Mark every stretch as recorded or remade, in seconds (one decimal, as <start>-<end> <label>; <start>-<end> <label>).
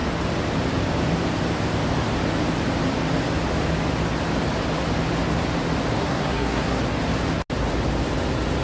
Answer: 0.0-6.0 recorded; 6.0-6.8 remade; 6.8-8.6 recorded